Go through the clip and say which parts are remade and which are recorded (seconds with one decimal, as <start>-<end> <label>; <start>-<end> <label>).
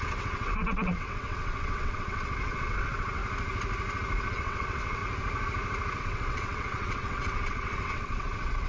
0.0-3.2 remade; 3.2-4.3 recorded; 4.3-5.0 remade; 5.0-6.0 recorded; 6.0-8.7 remade